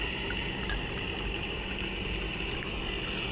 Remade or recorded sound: recorded